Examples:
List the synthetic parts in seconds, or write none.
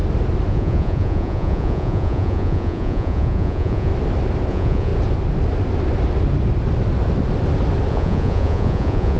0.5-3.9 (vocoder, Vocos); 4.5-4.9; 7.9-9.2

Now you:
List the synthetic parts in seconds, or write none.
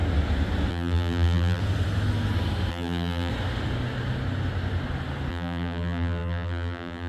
0.7-1.6 (vocoder, BigVGAN v2); 2.7-3.3; 5.3-7.1